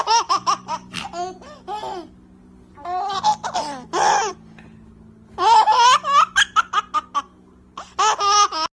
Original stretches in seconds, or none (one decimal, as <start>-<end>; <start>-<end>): 0.0-8.8